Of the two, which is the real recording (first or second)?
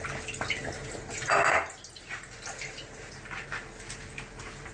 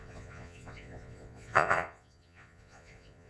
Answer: first